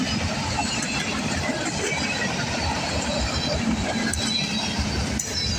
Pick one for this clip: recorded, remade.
recorded